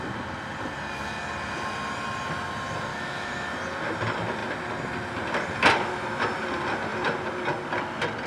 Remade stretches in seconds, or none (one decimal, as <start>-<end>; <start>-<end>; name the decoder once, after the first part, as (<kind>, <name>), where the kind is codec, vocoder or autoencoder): 2.9-3.5 (autoencoder, DAC-VAE)